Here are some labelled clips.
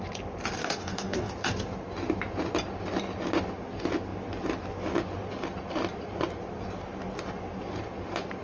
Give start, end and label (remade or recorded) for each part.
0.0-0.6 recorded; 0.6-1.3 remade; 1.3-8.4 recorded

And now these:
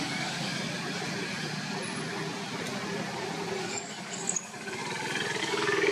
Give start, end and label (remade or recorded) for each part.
0.0-0.5 remade; 0.5-3.6 recorded; 3.6-4.8 remade; 4.8-5.4 recorded; 5.4-5.9 remade

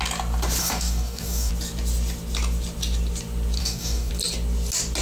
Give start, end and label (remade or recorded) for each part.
0.0-0.6 recorded; 0.6-1.5 remade; 1.5-3.6 recorded; 3.6-4.1 remade; 4.1-5.0 recorded

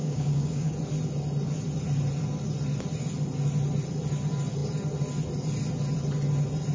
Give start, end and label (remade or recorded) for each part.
0.0-0.7 remade; 0.7-6.7 recorded